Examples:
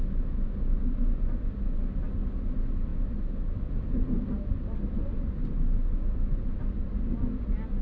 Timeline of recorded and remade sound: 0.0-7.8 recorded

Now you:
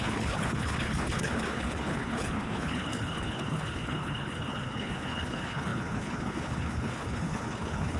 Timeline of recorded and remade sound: 0.0-8.0 remade

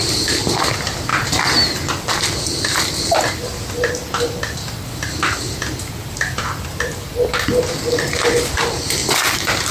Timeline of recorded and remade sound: 0.0-9.7 recorded